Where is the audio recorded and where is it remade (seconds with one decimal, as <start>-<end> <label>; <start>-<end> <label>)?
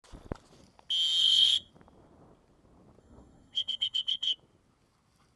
0.0-1.2 recorded; 1.2-1.7 remade; 1.7-3.0 recorded; 3.0-4.3 remade; 4.3-5.4 recorded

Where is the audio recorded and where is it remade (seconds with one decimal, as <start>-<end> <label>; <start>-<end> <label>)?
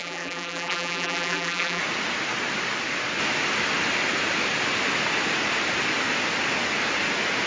0.0-1.8 remade; 1.8-7.5 recorded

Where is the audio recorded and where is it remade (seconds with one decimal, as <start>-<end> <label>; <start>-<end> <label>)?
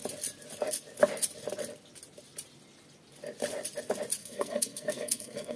0.0-4.2 recorded; 4.2-5.6 remade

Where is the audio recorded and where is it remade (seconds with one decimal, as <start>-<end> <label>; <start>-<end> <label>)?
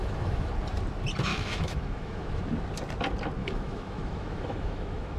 0.0-0.5 remade; 0.5-1.3 recorded; 1.3-2.4 remade; 2.4-3.4 recorded; 3.4-5.2 remade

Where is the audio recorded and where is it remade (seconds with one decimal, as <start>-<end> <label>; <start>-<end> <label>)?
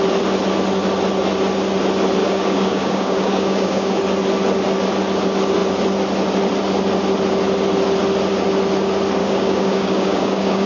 0.0-2.2 recorded; 2.2-4.0 remade; 4.0-9.2 recorded; 9.2-10.7 remade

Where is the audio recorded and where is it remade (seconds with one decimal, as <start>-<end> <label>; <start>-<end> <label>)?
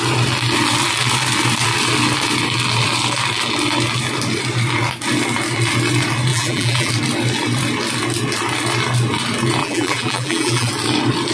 0.0-6.3 recorded; 6.3-6.9 remade; 6.9-9.6 recorded; 9.6-10.7 remade; 10.7-11.3 recorded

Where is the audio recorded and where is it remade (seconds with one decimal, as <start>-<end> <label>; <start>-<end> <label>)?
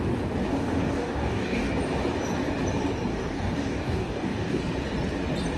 0.0-0.5 recorded; 0.5-1.7 remade; 1.7-3.1 recorded; 3.1-4.6 remade; 4.6-5.6 recorded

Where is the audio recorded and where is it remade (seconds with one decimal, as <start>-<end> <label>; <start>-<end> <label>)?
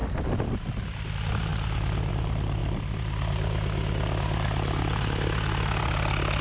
0.0-6.4 recorded